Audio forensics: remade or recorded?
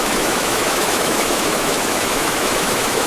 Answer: remade